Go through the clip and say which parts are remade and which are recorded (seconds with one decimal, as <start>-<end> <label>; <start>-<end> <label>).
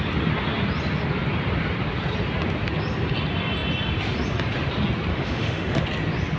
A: 0.0-5.1 recorded; 5.1-5.8 remade; 5.8-6.4 recorded